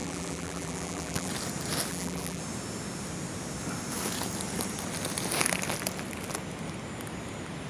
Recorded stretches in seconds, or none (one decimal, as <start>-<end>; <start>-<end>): 1.3-1.9; 2.4-7.7